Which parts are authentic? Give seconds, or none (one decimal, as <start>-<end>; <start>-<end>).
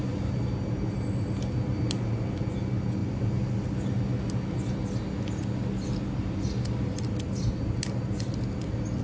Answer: 0.0-9.0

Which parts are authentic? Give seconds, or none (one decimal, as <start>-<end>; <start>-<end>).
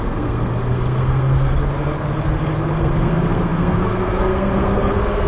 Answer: 1.5-2.7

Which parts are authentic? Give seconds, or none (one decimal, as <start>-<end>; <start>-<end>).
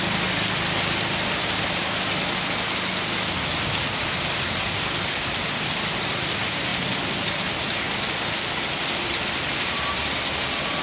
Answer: 0.0-10.8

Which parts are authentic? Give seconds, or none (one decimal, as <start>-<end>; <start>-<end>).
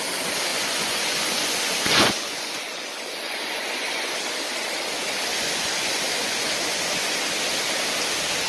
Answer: 0.0-0.5; 4.1-5.3; 7.2-8.5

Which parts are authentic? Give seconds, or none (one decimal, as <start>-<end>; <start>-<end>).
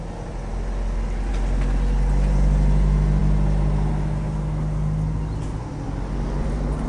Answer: 0.0-6.9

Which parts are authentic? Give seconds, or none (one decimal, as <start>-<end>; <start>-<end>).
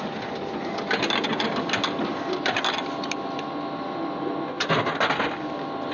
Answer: 0.0-5.9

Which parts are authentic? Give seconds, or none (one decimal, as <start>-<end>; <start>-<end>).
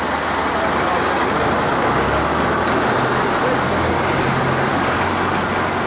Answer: 0.0-4.7; 5.4-5.9